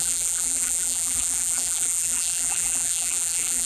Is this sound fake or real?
fake